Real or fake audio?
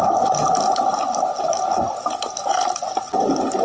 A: real